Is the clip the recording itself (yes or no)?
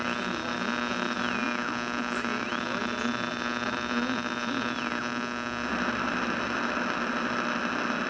yes